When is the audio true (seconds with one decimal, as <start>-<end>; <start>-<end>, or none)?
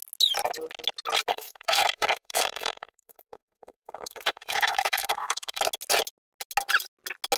0.0-1.3; 5.6-7.4